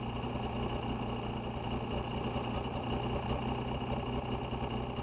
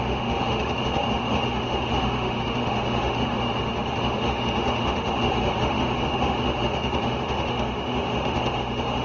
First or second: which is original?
first